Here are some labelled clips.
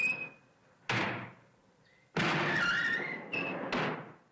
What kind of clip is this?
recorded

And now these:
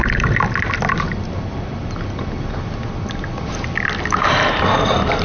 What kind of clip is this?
recorded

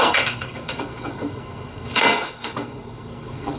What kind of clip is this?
remade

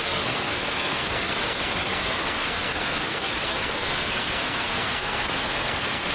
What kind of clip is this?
remade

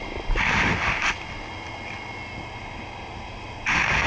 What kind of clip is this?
recorded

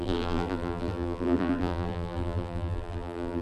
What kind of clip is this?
remade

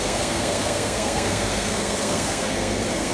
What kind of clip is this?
remade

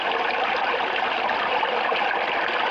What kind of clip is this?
recorded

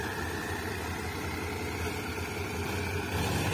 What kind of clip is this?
recorded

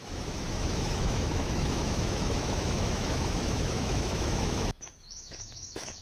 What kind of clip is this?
remade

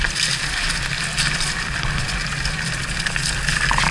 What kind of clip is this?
recorded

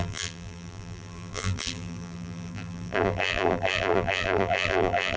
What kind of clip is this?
remade